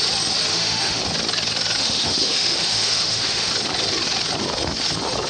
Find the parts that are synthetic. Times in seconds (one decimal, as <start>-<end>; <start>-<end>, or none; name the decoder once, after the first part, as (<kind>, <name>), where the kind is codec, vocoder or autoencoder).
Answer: 0.5-1.0 (autoencoder, DAC-VAE); 1.8-3.5